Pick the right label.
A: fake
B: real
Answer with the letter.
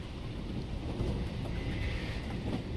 B